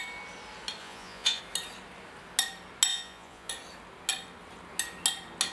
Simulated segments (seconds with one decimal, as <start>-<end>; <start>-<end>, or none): 0.8-1.4; 2.9-3.5